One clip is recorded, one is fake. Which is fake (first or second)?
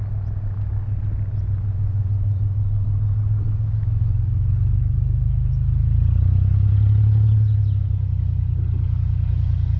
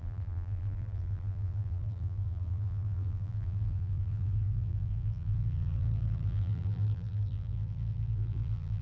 second